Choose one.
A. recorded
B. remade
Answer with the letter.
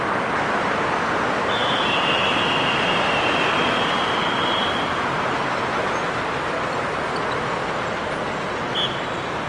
A